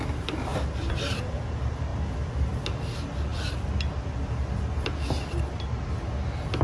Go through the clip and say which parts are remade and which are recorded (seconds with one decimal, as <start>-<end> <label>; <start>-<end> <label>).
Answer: 0.0-0.5 recorded; 0.5-1.3 remade; 1.3-6.6 recorded